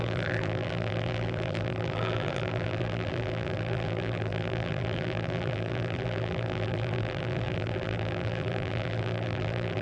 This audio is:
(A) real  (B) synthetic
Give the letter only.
B